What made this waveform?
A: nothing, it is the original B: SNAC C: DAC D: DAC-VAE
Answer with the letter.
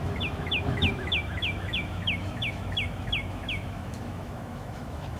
D